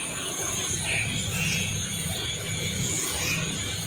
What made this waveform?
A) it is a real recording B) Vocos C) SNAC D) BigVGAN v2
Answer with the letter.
B